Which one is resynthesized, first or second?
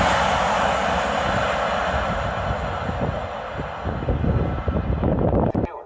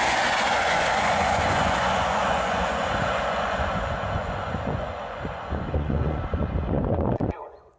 second